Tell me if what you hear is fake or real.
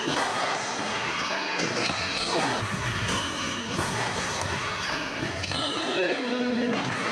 fake